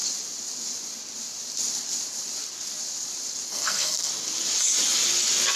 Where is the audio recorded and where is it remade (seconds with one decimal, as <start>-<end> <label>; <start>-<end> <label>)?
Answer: 0.0-3.5 recorded; 3.5-4.1 remade; 4.1-5.6 recorded